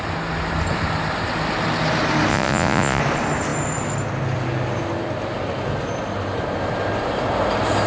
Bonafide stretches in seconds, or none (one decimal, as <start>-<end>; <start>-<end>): 0.0-2.3; 3.0-7.9